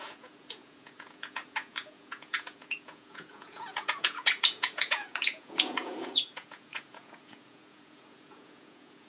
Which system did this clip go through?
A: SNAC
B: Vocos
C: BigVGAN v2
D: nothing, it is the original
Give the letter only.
B